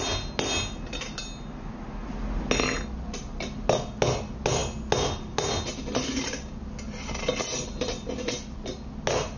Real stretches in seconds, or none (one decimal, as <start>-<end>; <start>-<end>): 0.0-9.4